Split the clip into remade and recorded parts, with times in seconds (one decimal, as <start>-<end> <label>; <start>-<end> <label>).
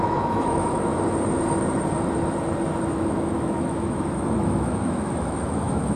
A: 0.0-0.9 remade; 0.9-2.9 recorded; 2.9-6.0 remade